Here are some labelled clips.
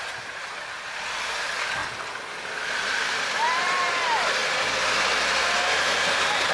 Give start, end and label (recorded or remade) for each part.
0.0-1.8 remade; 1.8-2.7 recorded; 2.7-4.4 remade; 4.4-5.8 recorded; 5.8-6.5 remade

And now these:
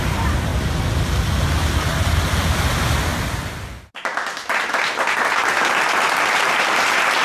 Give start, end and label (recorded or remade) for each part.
0.0-7.2 recorded

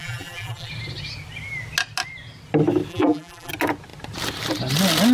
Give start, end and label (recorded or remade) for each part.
0.0-0.7 remade; 0.7-2.9 recorded; 2.9-3.5 remade; 3.5-5.1 recorded

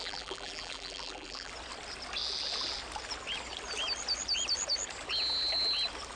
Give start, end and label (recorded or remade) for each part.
0.0-1.5 remade; 1.5-6.2 recorded

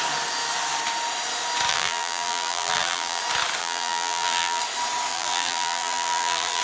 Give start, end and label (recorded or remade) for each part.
0.0-1.7 recorded; 1.7-3.2 remade; 3.2-3.6 recorded; 3.6-4.6 remade; 4.6-5.1 recorded; 5.1-6.6 remade